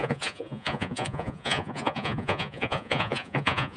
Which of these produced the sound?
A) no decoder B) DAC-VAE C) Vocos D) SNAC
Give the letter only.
C